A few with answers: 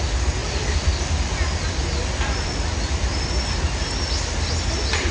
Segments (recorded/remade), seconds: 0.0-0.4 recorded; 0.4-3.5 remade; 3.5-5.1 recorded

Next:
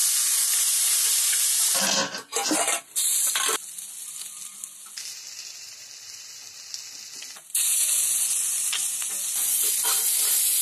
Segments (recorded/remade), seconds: 0.0-10.6 recorded

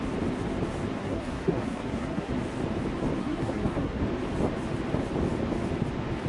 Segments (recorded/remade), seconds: 0.0-1.0 recorded; 1.0-2.3 remade; 2.3-3.2 recorded; 3.2-4.0 remade; 4.0-6.3 recorded

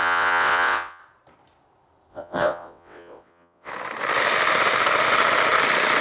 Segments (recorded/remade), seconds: 0.0-1.0 remade; 1.0-2.1 recorded; 2.1-3.7 remade; 3.7-6.0 recorded

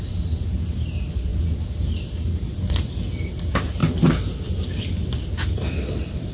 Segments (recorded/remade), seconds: 0.0-6.3 recorded

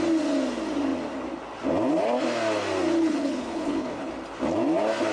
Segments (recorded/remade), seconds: 0.0-3.0 recorded; 3.0-4.1 remade; 4.1-5.1 recorded

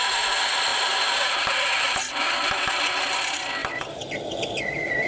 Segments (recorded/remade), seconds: 0.0-5.1 recorded

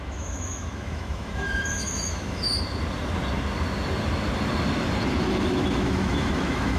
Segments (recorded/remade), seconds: 0.0-2.5 remade; 2.5-5.2 recorded; 5.2-6.8 remade